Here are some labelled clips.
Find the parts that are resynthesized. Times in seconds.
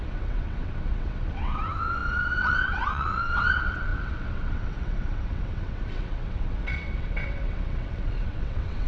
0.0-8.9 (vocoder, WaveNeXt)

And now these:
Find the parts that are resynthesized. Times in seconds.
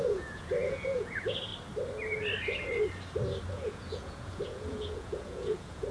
0.0-1.5 (vocoder, Vocos); 3.5-5.9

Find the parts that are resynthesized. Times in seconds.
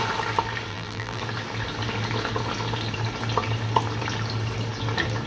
0.7-1.2 (vocoder, BigVGAN v2)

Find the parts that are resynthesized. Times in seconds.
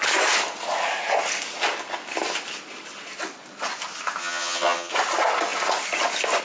4.2-4.9 (vocoder, HiFi-GAN)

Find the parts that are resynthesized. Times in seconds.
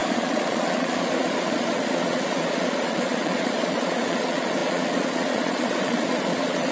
0.0-6.7 (vocoder, Vocos)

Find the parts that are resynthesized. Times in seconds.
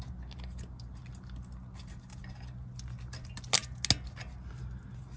none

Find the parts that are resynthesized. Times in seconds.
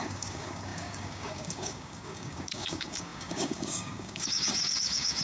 0.0-5.2 (codec, DAC)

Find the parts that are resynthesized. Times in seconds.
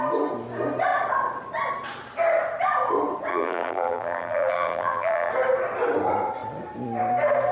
3.3-5.3 (vocoder, BigVGAN v2)